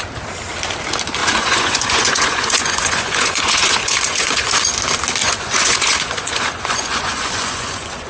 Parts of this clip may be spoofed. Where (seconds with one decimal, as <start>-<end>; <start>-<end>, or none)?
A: 1.2-4.5; 5.2-8.1